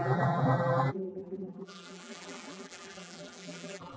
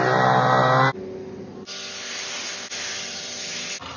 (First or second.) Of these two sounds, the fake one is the first